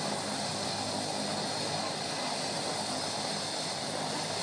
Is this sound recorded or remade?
recorded